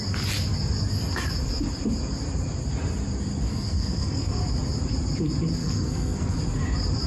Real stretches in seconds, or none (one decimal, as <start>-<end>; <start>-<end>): 0.0-3.5; 4.3-5.6; 6.4-7.1